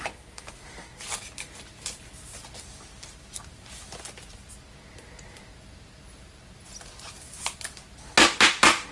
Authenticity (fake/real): real